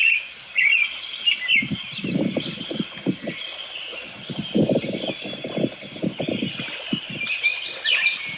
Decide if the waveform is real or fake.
fake